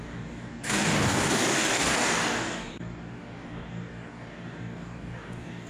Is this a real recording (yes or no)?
no